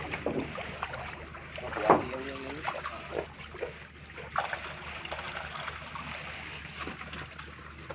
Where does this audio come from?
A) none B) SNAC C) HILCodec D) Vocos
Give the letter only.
A